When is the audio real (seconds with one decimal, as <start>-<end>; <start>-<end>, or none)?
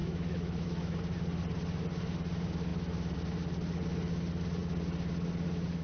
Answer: 1.0-5.8